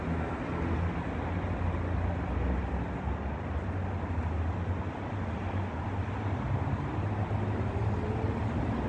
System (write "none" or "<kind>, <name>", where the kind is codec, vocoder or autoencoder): none